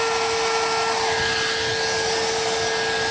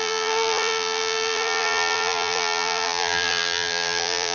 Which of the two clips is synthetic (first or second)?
second